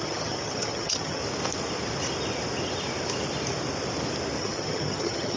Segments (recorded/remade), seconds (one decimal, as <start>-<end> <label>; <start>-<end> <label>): 0.0-1.2 remade; 1.2-4.4 recorded; 4.4-5.4 remade